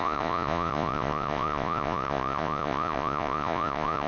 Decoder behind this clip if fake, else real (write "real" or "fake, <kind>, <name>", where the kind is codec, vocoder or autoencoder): fake, vocoder, Vocos